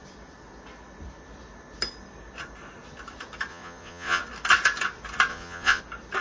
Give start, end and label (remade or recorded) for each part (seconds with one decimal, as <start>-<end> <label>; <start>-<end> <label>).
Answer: 0.0-3.5 recorded; 3.5-4.2 remade; 4.2-5.3 recorded; 5.3-5.8 remade; 5.8-6.2 recorded